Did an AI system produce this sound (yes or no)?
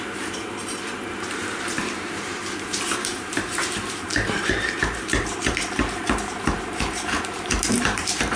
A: yes